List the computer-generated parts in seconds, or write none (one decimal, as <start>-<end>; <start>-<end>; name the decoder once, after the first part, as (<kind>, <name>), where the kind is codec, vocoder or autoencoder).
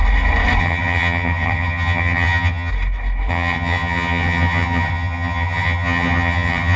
0.6-2.7 (vocoder, HiFi-GAN); 3.3-6.8